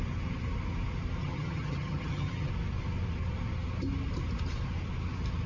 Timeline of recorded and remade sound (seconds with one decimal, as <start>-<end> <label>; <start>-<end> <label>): 0.0-1.2 recorded; 1.2-2.5 remade; 2.5-5.5 recorded